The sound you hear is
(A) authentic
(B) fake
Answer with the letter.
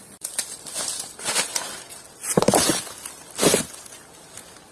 A